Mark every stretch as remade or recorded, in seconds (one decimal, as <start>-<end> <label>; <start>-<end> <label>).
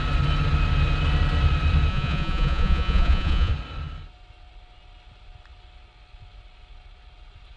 0.0-1.9 recorded; 1.9-3.5 remade; 3.5-7.6 recorded